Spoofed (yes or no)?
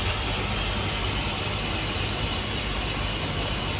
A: no